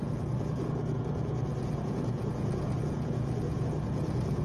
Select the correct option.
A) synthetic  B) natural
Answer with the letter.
A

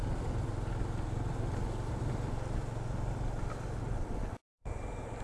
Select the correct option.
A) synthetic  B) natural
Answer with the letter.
B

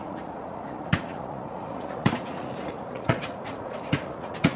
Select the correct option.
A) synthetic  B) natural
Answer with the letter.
A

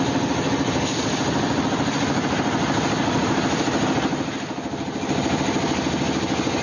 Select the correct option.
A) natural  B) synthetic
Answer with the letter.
A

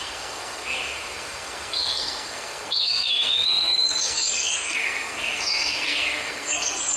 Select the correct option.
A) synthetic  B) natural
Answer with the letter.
A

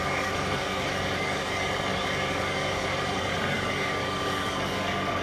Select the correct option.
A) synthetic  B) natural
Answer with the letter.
A